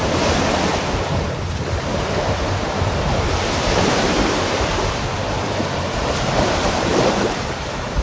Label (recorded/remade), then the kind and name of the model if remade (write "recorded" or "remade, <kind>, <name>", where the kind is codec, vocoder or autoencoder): remade, vocoder, BigVGAN v2